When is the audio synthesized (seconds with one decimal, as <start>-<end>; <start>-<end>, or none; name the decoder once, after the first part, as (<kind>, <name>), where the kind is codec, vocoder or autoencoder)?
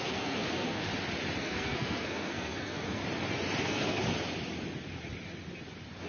0.0-0.9 (codec, SNAC); 1.4-3.0; 3.6-4.0